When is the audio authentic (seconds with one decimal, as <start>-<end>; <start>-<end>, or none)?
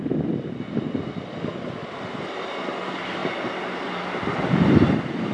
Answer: 0.0-5.3